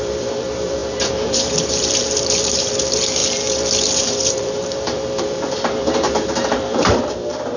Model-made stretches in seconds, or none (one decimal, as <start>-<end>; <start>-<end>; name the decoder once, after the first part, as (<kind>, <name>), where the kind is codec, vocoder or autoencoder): 0.0-7.6 (vocoder, BigVGAN v2)